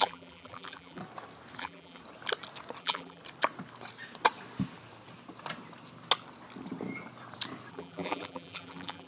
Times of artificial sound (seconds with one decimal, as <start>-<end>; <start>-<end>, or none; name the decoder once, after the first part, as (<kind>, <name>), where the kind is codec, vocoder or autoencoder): 0.0-1.0 (vocoder, BigVGAN v2); 1.6-2.0; 2.8-3.2; 7.7-9.1